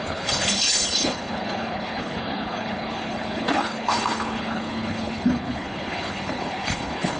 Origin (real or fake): fake